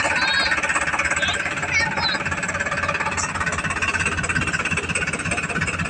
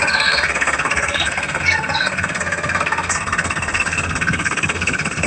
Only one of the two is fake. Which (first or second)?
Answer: second